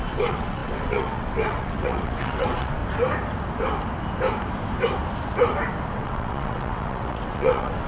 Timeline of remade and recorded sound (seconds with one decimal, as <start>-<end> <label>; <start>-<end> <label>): 0.0-2.8 remade; 2.8-5.9 recorded; 5.9-7.9 remade